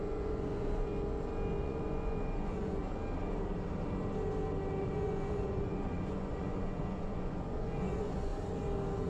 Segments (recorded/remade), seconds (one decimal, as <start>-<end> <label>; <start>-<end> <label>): 0.0-0.9 remade; 0.9-1.6 recorded; 1.6-2.8 remade; 2.8-4.8 recorded; 4.8-8.3 remade; 8.3-9.1 recorded